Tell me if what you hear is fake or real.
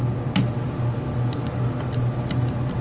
real